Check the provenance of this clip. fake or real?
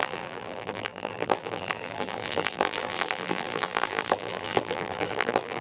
fake